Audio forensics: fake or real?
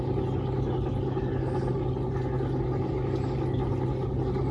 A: real